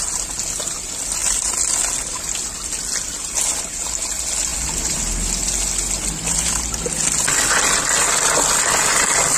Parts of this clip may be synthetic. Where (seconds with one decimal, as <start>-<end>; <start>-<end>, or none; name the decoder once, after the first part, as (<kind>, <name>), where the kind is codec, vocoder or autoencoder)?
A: none